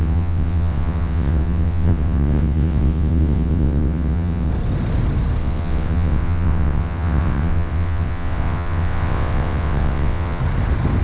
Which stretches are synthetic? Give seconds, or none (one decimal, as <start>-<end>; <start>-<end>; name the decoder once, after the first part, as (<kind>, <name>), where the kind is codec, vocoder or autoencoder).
0.0-4.5 (vocoder, WaveNeXt); 5.4-10.4